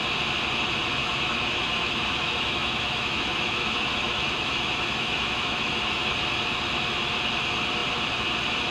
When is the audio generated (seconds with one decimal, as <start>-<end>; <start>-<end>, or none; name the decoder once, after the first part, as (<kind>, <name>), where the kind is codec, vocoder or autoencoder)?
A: 1.0-6.1 (autoencoder, DAC-VAE)